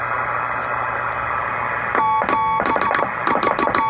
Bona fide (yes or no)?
yes